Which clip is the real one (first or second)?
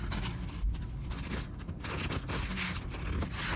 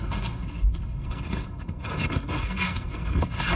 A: first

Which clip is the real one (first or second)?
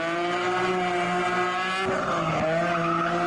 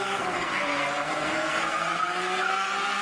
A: first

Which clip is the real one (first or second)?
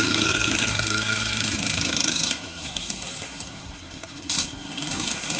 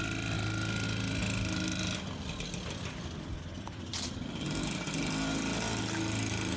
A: second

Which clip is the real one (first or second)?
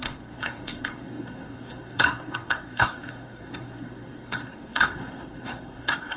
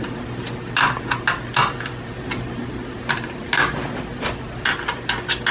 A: second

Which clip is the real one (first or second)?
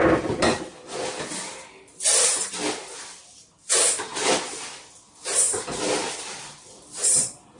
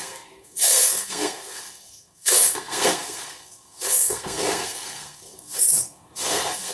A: first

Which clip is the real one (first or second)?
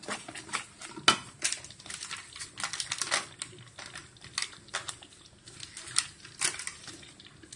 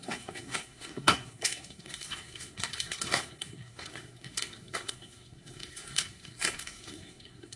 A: first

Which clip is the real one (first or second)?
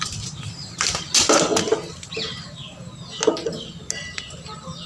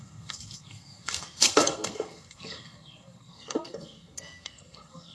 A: first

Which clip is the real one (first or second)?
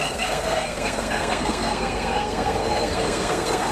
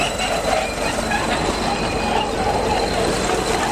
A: second